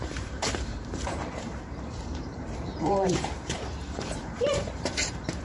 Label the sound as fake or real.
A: fake